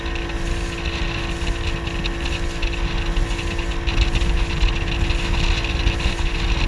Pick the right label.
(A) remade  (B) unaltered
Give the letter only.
B